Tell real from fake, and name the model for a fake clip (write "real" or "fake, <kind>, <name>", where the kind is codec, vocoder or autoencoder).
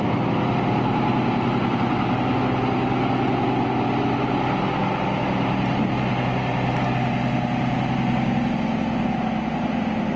real